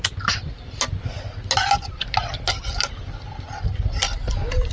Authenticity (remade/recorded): recorded